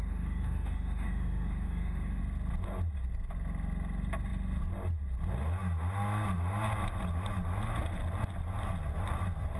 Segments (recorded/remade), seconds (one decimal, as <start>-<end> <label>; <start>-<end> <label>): 0.0-2.2 remade; 2.2-9.6 recorded